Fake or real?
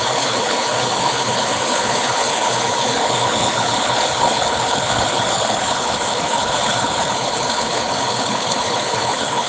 fake